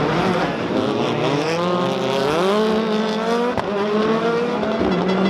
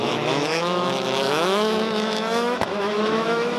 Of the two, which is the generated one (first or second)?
second